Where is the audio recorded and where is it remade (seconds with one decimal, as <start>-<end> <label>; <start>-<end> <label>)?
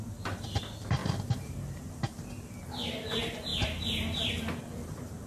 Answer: 0.0-1.0 recorded; 1.0-1.9 remade; 1.9-3.5 recorded; 3.5-4.3 remade; 4.3-5.3 recorded